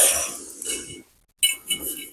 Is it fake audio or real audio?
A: real